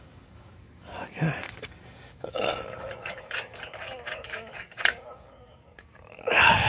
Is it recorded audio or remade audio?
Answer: remade